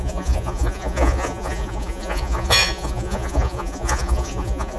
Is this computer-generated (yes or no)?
yes